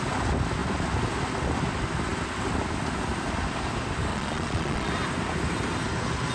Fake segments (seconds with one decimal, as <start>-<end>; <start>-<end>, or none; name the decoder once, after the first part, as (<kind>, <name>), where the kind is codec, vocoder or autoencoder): 4.1-4.9 (vocoder, Vocos)